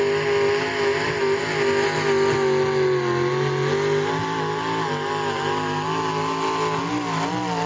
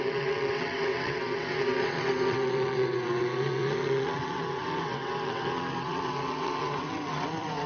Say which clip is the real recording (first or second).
first